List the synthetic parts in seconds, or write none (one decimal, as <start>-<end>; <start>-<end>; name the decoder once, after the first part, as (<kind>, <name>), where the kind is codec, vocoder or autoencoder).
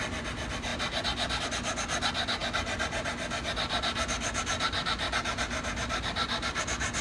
none